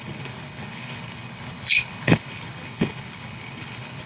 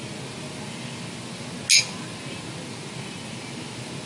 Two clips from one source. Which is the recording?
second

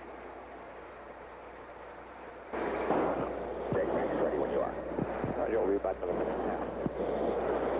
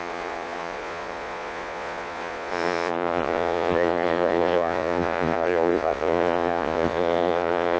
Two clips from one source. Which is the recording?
first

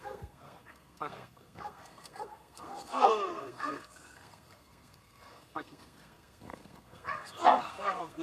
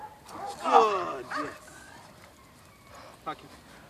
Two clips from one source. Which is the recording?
second